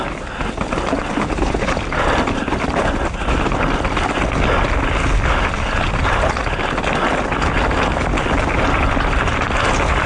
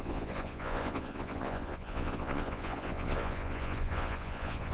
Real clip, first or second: first